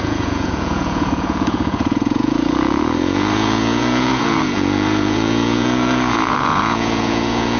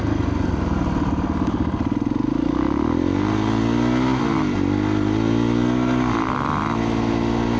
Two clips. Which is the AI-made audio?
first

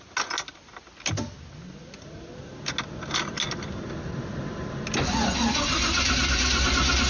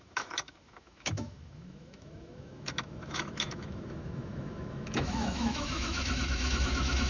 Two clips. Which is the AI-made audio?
second